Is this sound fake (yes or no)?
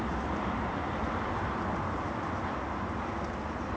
no